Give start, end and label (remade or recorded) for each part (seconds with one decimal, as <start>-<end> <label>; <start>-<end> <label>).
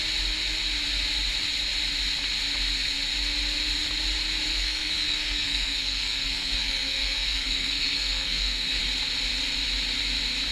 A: 0.0-4.5 recorded; 4.5-8.8 remade; 8.8-10.5 recorded